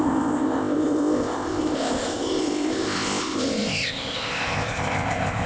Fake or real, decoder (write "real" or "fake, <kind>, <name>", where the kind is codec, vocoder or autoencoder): fake, codec, ZipCodec